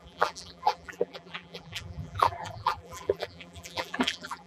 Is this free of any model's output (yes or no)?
no